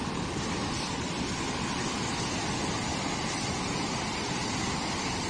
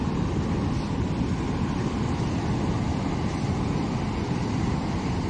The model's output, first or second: first